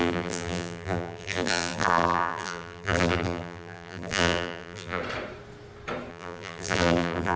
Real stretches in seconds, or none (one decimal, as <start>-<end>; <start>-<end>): 5.0-6.1